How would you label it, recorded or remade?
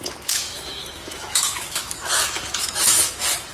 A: remade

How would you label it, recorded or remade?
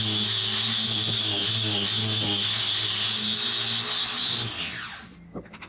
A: recorded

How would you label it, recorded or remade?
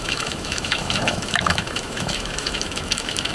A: remade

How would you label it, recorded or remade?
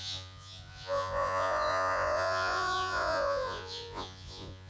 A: remade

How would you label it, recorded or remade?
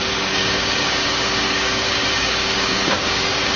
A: remade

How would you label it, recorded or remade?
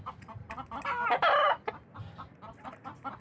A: recorded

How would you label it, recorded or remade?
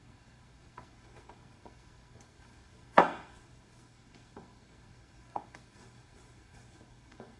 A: remade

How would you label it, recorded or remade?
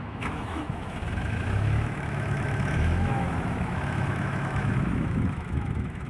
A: remade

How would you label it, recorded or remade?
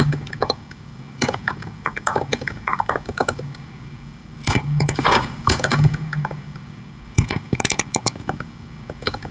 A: remade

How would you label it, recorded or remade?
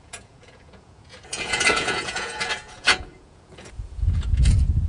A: remade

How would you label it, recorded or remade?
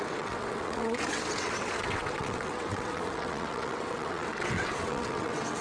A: remade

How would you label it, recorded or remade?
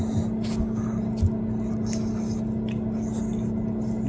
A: recorded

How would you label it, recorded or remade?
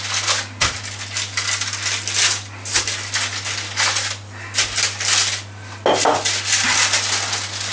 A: recorded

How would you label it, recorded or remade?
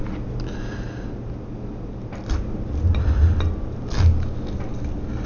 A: recorded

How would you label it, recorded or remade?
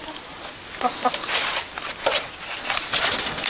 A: recorded